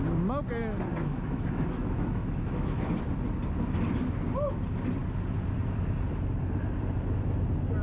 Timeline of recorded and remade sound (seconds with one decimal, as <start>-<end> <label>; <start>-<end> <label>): 0.0-0.9 recorded; 0.9-3.0 remade; 3.0-7.8 recorded